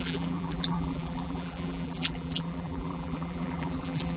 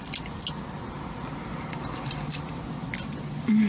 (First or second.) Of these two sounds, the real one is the second